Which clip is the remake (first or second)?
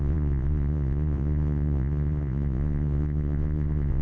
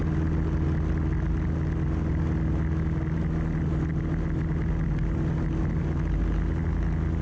first